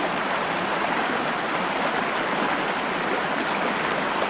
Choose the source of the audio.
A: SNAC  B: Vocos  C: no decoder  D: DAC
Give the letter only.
C